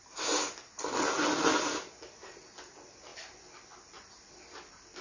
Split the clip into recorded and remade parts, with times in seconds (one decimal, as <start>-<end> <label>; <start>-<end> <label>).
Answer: 0.0-5.0 recorded